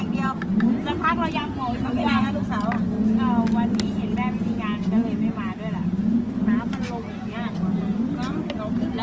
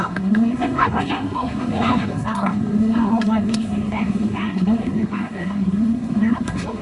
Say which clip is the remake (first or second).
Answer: second